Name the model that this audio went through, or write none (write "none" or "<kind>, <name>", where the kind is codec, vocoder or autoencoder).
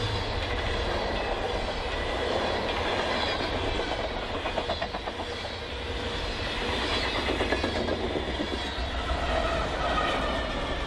none